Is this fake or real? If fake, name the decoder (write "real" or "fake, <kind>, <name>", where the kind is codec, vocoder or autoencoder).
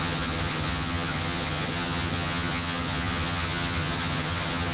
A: fake, vocoder, HiFi-GAN